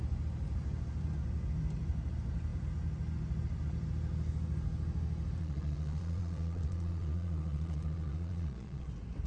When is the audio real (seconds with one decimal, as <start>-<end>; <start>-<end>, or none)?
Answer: 0.0-5.4; 8.9-9.3